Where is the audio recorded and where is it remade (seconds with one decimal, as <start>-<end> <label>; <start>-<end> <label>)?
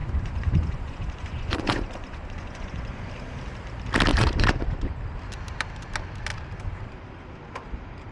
0.0-3.1 remade; 3.1-4.1 recorded; 4.1-5.0 remade; 5.0-8.1 recorded